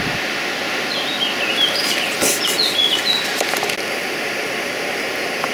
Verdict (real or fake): real